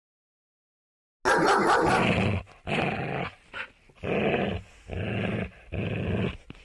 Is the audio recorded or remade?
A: recorded